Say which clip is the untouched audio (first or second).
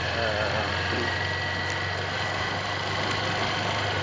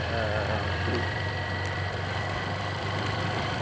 first